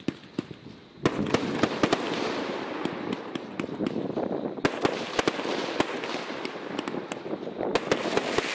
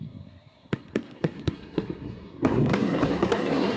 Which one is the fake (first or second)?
second